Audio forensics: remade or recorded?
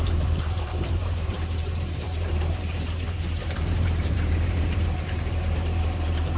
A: remade